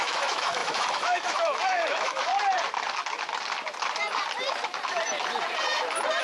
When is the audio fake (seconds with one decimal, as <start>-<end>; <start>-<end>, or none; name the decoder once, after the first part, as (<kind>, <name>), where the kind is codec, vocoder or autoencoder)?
0.0-2.3 (autoencoder, DAC-VAE)